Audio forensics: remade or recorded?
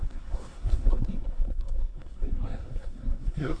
remade